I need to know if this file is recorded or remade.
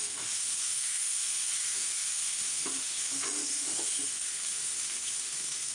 remade